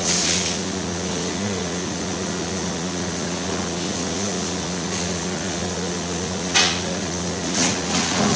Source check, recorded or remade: remade